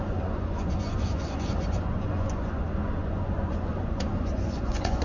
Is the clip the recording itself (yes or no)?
no